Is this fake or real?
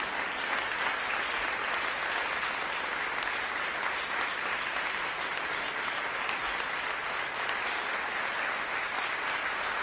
real